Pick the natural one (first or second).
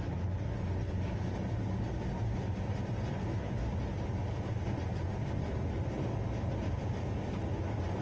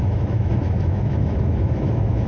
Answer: first